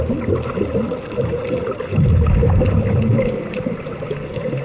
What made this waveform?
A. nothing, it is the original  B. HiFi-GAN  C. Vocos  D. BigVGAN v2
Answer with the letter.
A